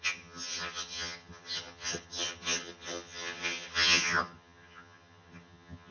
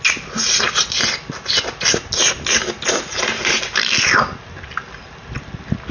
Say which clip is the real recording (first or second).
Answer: second